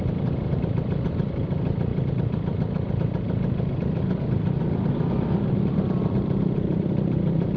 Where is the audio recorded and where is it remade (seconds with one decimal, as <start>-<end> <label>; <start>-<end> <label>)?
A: 0.0-7.6 remade